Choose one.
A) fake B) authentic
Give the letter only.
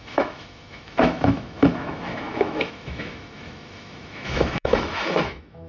A